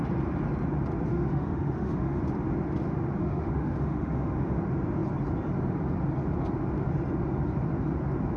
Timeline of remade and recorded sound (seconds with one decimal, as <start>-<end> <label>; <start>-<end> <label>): 0.0-1.1 recorded; 1.1-2.2 remade; 2.2-3.2 recorded; 3.2-4.6 remade; 4.6-8.4 recorded